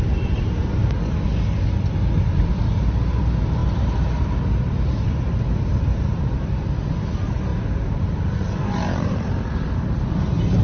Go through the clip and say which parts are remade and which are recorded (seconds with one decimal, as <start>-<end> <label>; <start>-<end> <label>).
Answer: 0.0-0.8 remade; 0.8-3.2 recorded; 3.2-10.6 remade